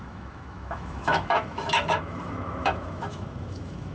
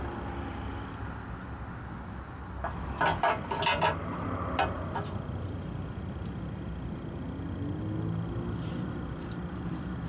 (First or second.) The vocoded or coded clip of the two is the first